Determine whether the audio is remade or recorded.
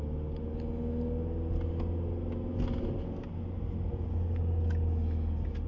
recorded